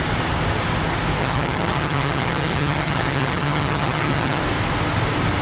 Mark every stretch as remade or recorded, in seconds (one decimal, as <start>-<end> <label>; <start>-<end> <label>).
0.0-1.2 recorded; 1.2-4.4 remade; 4.4-5.4 recorded